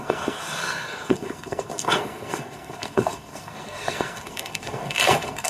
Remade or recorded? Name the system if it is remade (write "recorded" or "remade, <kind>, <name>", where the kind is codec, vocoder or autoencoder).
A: remade, codec, SNAC